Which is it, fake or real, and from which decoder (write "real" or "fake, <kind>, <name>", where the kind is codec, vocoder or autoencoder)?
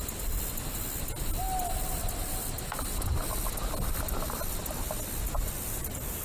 real